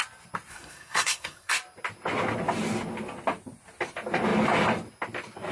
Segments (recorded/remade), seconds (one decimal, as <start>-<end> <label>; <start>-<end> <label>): 0.0-0.5 recorded; 0.5-1.5 remade; 1.5-5.5 recorded